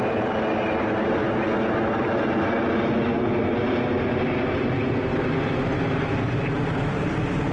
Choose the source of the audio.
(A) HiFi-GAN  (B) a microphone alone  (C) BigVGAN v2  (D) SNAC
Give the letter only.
B